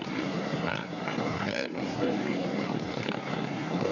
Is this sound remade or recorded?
remade